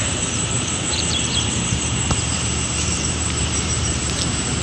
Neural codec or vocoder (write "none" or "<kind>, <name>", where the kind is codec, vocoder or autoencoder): vocoder, BigVGAN v2